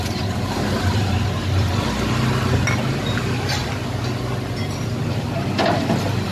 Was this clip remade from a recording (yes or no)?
no